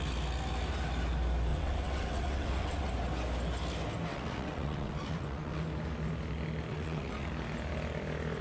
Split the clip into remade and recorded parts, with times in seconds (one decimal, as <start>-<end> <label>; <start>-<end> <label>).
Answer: 0.0-1.5 recorded; 1.5-2.9 remade; 2.9-4.1 recorded; 4.1-5.6 remade; 5.6-6.7 recorded; 6.7-7.3 remade; 7.3-8.4 recorded